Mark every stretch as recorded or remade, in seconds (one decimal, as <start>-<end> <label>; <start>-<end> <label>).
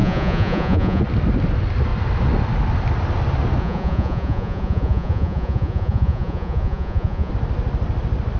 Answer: 0.0-1.0 remade; 1.0-3.6 recorded; 3.6-7.3 remade; 7.3-8.4 recorded